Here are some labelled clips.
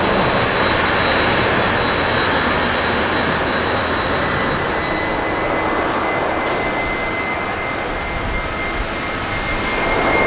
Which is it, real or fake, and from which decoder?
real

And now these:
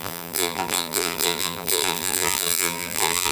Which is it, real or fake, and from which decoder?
fake, vocoder, BigVGAN v2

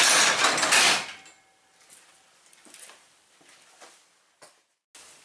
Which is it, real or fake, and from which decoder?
real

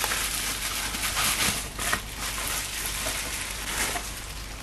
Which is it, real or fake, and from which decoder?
real